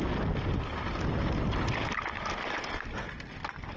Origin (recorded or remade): recorded